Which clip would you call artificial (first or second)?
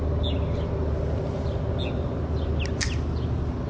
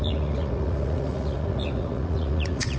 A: second